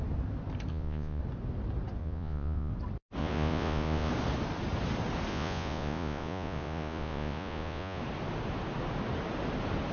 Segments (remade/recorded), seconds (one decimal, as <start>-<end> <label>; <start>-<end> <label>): 0.0-0.7 recorded; 0.7-1.2 remade; 1.2-2.0 recorded; 2.0-2.7 remade; 2.7-3.2 recorded; 3.2-4.1 remade; 4.1-5.3 recorded; 5.3-8.0 remade; 8.0-9.9 recorded